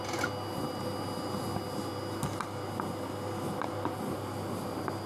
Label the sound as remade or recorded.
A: recorded